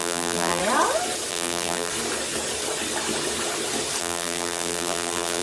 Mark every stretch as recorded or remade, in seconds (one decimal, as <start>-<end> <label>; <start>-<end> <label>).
0.0-0.6 remade; 0.6-1.3 recorded; 1.3-1.9 remade; 1.9-4.0 recorded; 4.0-5.4 remade